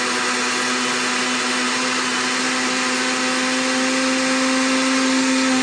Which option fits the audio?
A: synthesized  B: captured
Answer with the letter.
B